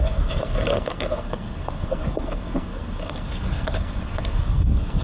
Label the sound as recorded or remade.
remade